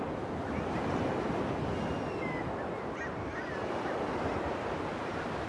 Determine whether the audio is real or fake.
real